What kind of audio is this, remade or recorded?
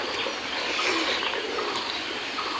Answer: recorded